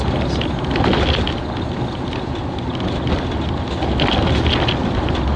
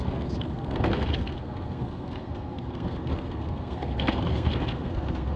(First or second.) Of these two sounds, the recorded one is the first